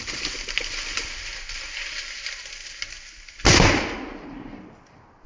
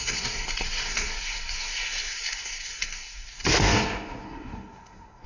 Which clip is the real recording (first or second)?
first